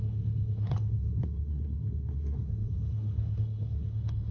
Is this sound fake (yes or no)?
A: yes